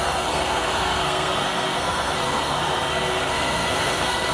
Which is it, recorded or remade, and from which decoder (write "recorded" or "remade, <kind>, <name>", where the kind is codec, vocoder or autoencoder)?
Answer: remade, codec, SNAC